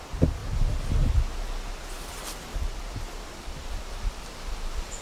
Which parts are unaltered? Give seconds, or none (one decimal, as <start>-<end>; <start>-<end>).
0.0-2.5; 3.2-5.0